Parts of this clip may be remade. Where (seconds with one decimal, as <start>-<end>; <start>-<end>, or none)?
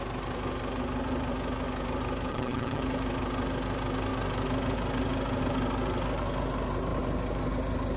2.3-2.8